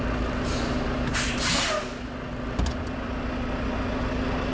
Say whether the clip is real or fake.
real